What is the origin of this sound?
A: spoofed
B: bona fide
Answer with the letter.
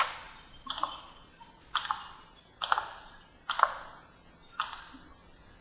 B